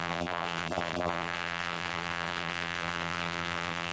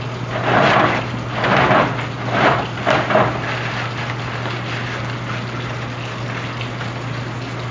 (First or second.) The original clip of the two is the second